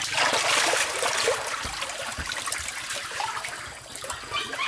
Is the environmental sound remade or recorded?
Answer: recorded